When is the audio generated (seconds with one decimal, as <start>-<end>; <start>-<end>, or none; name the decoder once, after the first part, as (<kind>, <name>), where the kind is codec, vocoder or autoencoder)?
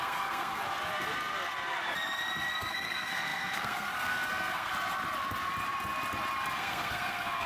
0.0-0.6 (codec, SNAC); 2.7-4.7; 6.6-7.5